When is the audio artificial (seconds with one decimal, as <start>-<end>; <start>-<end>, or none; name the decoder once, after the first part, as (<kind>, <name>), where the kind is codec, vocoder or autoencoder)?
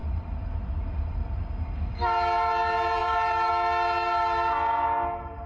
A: 0.0-1.4 (vocoder, BigVGAN v2); 3.0-3.5